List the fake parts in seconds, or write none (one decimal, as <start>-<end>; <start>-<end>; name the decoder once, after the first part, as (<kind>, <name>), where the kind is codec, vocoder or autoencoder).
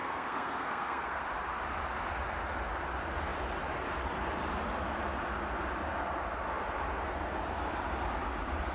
0.0-1.2 (codec, SNAC)